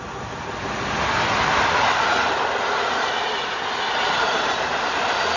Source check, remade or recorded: recorded